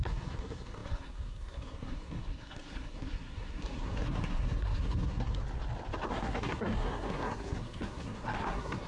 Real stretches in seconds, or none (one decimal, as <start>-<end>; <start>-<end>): 5.4-6.1